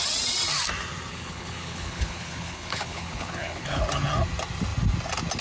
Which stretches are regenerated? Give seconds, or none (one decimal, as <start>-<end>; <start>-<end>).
1.1-3.8